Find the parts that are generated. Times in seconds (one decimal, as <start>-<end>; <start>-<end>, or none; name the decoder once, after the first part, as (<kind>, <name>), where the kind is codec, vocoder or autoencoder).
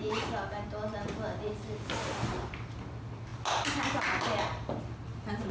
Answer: none